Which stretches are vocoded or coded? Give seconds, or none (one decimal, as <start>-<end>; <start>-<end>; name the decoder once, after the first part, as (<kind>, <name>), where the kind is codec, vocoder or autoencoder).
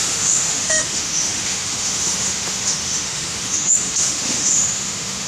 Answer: 0.0-5.3 (autoencoder, DAC-VAE)